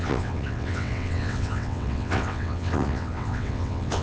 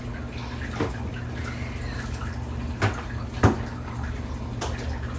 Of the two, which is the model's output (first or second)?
first